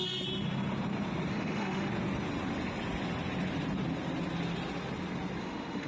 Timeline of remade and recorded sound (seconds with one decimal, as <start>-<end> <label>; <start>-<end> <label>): 0.0-1.3 recorded; 1.3-1.9 remade; 1.9-5.4 recorded; 5.4-5.9 remade